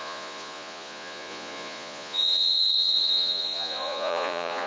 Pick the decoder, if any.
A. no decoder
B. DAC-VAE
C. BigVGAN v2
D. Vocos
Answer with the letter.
D